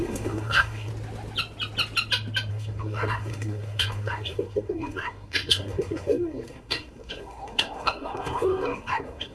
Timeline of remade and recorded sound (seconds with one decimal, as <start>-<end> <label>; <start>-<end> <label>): 0.0-0.9 remade; 0.9-2.5 recorded; 2.5-9.3 remade